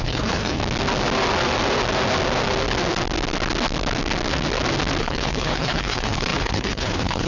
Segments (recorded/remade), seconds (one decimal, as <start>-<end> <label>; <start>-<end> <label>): 0.0-0.6 remade; 0.6-5.0 recorded; 5.0-7.3 remade